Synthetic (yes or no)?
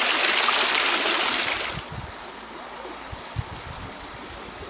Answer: no